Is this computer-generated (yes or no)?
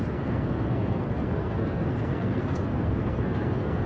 yes